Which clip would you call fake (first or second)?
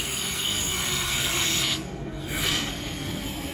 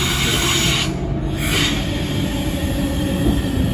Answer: first